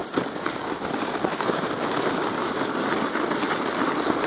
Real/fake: real